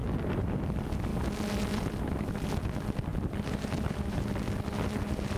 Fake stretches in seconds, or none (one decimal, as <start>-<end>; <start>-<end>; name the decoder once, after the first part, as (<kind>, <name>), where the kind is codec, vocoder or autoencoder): 0.0-0.6 (vocoder, BigVGAN v2); 3.1-4.3